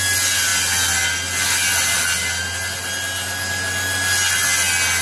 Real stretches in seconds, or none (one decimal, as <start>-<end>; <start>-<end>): 0.0-5.0